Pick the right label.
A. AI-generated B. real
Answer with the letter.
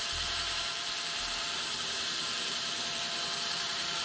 A